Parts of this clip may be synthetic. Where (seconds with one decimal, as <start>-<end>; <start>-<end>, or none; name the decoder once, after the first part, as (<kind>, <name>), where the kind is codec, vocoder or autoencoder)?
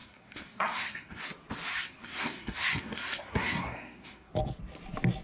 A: 0.0-1.2 (codec, SNAC); 1.7-4.3